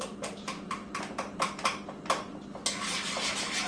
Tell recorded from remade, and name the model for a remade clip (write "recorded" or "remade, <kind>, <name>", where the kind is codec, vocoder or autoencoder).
recorded